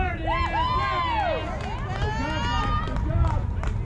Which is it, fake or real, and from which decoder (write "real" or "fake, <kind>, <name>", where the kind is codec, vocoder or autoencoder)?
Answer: real